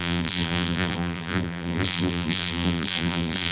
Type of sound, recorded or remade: remade